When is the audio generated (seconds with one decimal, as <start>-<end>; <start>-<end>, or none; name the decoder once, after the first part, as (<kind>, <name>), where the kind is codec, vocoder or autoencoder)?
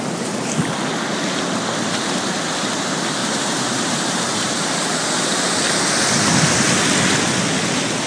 3.2-5.6 (vocoder, BigVGAN v2)